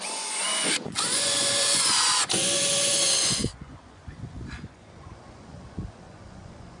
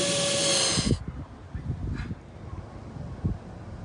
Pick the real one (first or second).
second